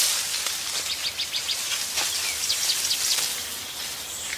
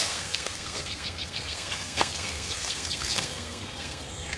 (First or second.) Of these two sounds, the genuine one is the first